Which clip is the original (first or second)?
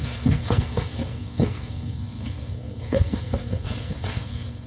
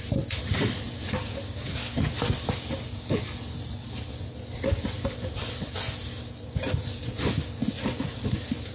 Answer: second